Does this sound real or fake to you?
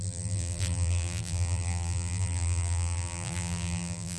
fake